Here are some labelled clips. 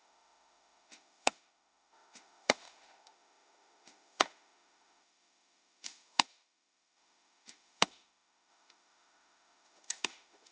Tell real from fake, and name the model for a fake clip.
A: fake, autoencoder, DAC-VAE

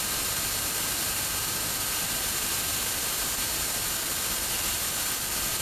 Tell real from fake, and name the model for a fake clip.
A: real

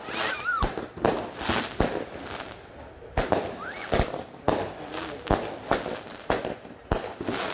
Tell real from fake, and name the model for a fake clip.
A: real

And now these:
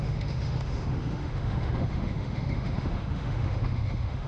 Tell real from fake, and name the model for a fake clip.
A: fake, autoencoder, DAC-VAE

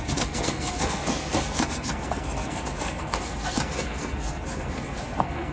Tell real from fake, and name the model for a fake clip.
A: fake, codec, SNAC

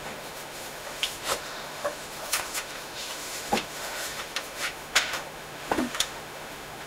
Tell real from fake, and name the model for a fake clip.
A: fake, autoencoder, DAC-VAE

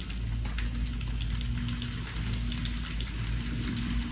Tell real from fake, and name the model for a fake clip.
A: real